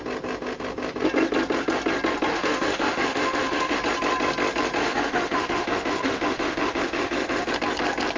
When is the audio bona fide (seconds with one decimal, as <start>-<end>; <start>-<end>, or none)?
0.0-2.3; 3.8-4.8; 7.5-8.2